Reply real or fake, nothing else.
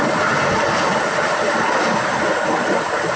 real